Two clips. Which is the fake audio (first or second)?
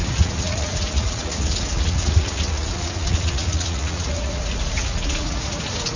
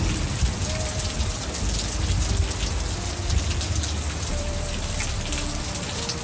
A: first